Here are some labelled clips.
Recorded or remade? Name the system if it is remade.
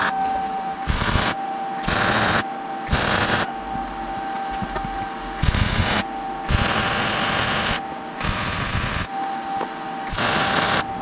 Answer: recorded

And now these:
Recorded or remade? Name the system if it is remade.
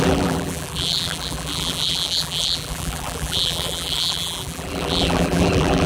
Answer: remade, vocoder, BigVGAN v2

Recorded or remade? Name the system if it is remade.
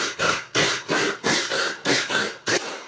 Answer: remade, codec, SNAC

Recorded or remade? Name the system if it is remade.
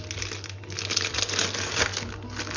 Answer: recorded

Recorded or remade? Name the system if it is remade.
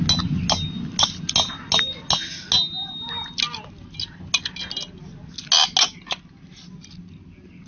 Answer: recorded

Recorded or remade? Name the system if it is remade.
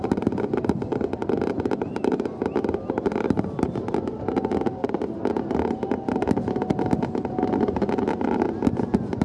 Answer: recorded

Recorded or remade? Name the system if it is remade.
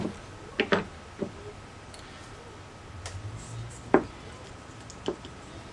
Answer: recorded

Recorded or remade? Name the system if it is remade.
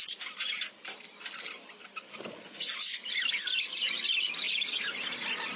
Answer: recorded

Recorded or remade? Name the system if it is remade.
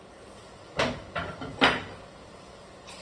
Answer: remade, vocoder, BigVGAN v2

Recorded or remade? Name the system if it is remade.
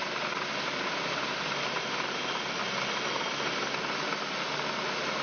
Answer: recorded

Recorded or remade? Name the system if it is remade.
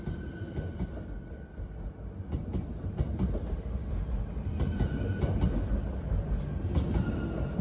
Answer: recorded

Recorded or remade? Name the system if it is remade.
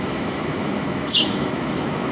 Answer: remade, autoencoder, DAC-VAE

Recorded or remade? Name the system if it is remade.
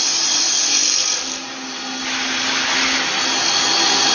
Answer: recorded